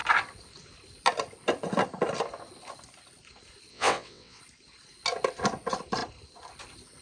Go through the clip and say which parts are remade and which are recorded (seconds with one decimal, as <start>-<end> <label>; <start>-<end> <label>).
0.0-3.7 recorded; 3.7-4.4 remade; 4.4-7.0 recorded